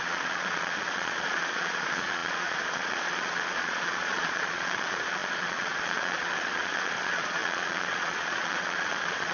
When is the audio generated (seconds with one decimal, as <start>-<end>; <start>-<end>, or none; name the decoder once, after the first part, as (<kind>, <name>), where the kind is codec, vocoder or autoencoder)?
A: 0.0-9.3 (vocoder, Vocos)